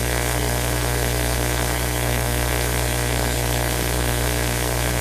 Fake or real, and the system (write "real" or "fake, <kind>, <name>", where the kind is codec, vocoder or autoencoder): fake, codec, SNAC